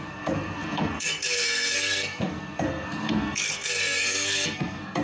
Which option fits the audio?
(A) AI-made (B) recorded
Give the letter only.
A